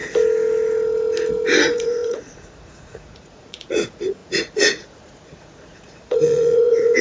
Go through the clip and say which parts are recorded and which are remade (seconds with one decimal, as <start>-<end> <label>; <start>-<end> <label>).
0.0-1.6 recorded; 1.6-7.0 remade